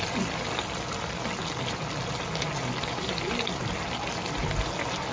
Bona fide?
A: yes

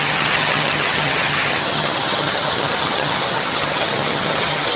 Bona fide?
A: no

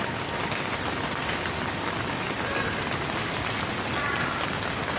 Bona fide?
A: yes